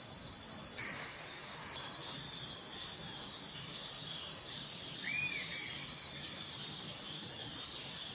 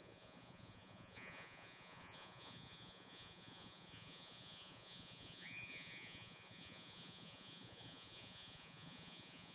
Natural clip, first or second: first